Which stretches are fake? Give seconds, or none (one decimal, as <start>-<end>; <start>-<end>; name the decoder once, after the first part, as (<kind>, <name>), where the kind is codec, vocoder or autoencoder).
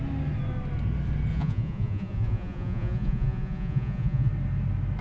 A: 1.3-4.3 (vocoder, Vocos)